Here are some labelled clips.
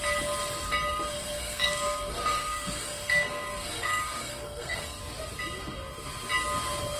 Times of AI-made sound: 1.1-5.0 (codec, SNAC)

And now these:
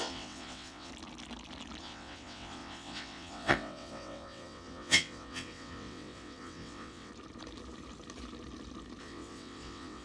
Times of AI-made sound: 0.0-0.9 (vocoder, WaveNeXt); 1.8-7.1; 9.0-10.0